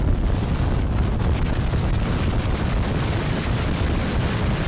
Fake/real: real